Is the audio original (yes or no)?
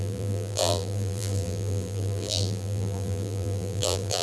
no